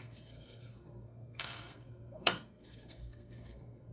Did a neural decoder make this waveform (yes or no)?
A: yes